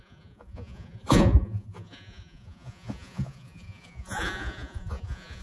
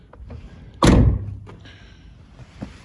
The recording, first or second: second